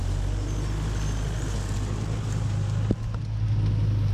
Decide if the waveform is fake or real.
real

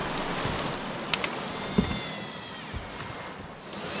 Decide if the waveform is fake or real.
real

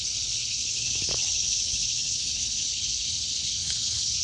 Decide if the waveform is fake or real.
fake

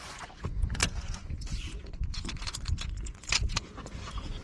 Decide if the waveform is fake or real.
fake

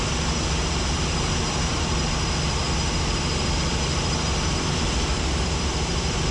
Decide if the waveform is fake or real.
fake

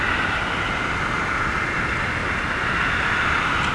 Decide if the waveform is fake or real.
real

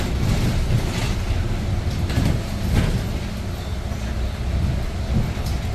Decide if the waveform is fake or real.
real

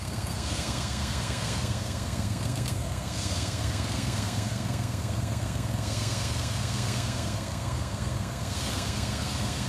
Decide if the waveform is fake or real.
fake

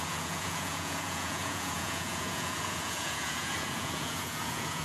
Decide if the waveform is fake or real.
fake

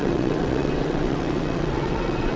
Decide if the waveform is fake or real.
fake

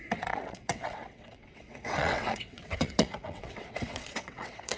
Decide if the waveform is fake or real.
fake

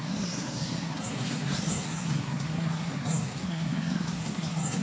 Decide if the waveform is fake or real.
fake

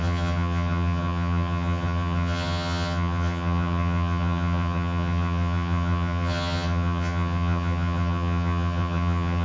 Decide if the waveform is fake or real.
fake